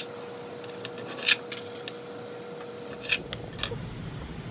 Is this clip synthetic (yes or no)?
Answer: no